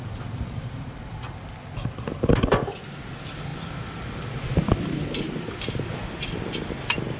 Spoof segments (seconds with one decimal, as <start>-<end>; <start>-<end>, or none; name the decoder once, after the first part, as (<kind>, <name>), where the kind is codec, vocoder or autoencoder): none